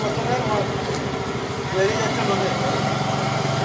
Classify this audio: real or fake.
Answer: real